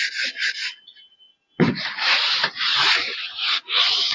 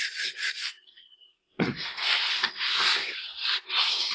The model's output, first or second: second